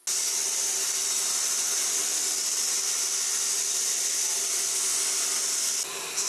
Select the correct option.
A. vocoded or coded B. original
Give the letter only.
B